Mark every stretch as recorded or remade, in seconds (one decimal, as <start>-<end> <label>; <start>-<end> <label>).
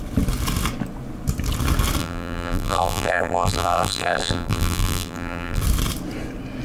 0.0-2.0 recorded; 2.0-5.6 remade; 5.6-6.6 recorded